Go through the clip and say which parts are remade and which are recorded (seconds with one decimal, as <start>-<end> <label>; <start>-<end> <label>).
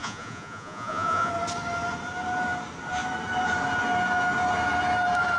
0.0-1.3 remade; 1.3-5.4 recorded